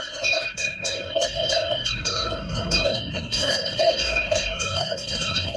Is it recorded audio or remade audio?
remade